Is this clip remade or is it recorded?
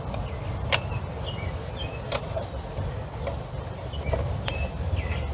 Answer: recorded